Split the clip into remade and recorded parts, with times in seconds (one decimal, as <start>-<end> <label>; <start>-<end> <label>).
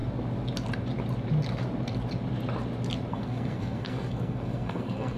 0.0-3.1 recorded; 3.1-5.2 remade